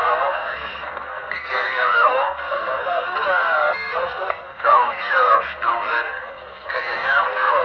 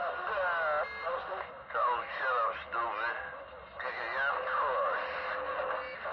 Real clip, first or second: second